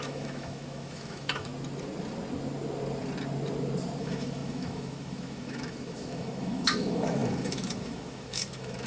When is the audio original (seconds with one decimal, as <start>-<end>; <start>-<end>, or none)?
1.5-4.0